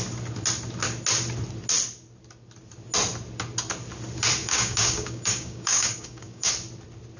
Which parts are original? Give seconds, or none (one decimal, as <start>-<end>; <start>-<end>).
0.0-4.4; 6.5-7.2